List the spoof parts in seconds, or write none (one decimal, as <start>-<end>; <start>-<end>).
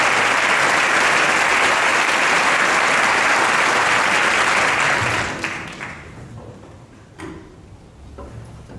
none